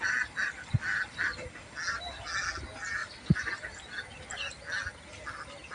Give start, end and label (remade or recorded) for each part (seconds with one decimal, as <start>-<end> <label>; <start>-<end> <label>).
0.0-5.7 recorded